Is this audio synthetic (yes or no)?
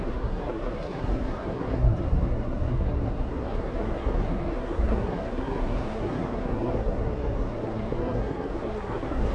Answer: yes